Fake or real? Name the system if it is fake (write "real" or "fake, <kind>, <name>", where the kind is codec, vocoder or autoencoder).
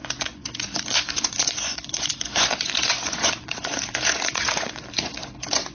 fake, vocoder, Vocos